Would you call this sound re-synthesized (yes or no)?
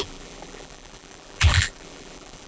yes